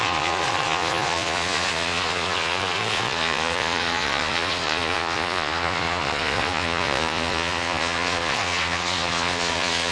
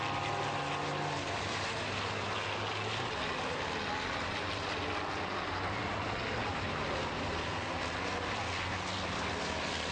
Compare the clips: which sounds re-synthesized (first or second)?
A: first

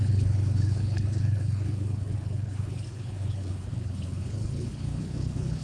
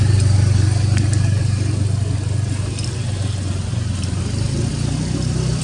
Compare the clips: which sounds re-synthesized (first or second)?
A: first